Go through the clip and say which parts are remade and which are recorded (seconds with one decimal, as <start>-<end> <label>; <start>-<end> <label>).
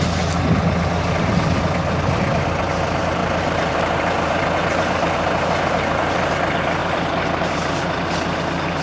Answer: 0.0-3.2 recorded; 3.2-6.3 remade; 6.3-6.8 recorded; 6.8-8.4 remade; 8.4-8.8 recorded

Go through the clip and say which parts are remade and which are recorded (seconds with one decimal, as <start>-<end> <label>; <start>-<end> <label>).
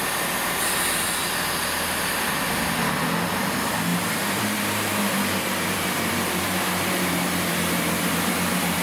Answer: 0.0-3.9 recorded; 3.9-8.8 remade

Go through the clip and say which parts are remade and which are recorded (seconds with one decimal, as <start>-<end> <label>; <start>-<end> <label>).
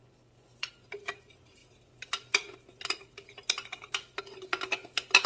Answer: 0.0-0.7 remade; 0.7-5.3 recorded